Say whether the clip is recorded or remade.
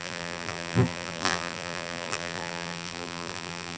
remade